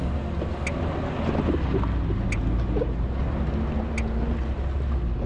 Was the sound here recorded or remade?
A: recorded